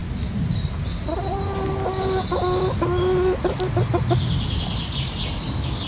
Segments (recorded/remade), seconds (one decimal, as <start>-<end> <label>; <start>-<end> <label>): 0.0-5.9 recorded